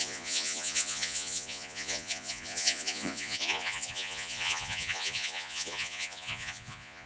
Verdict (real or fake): fake